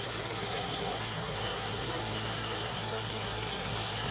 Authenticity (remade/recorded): remade